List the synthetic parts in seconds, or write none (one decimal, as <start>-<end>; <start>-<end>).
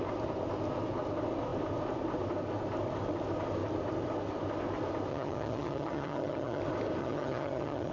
5.1-6.6; 7.0-7.9